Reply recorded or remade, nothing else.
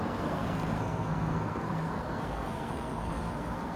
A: remade